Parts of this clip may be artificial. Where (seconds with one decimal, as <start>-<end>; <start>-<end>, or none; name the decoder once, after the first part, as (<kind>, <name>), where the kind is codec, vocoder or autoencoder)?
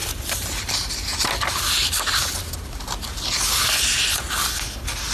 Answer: 0.0-0.7 (vocoder, BigVGAN v2); 1.1-4.1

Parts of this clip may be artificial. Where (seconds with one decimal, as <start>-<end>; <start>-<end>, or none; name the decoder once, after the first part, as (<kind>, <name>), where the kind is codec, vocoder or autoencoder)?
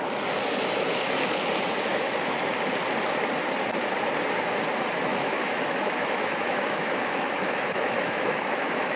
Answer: 1.9-2.5 (autoencoder, DAC-VAE); 5.1-9.0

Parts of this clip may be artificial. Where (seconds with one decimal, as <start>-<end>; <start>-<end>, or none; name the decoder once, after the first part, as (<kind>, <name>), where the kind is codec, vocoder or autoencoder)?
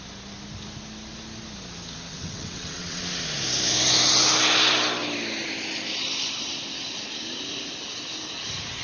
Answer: 2.1-3.0 (vocoder, WaveNeXt)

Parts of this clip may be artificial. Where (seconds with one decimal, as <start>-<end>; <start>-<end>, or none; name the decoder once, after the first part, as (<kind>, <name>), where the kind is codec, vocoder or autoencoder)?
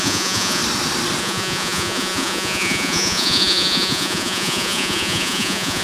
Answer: 0.0-0.6 (vocoder, Vocos); 1.2-5.8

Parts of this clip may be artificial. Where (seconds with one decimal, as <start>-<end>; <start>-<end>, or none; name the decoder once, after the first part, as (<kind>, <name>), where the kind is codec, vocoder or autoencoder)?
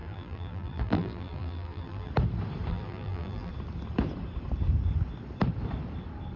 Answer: 0.0-2.1 (vocoder, BigVGAN v2); 2.7-3.5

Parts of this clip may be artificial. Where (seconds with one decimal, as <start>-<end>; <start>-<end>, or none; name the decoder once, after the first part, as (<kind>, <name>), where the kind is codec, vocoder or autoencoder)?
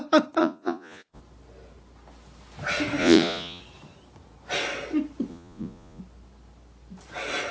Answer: 0.4-1.2 (vocoder, Vocos); 3.0-3.6; 5.3-6.0